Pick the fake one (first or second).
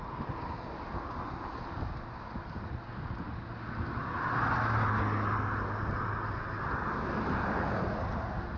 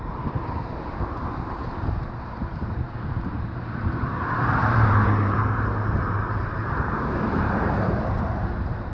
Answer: second